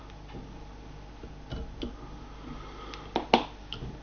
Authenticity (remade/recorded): recorded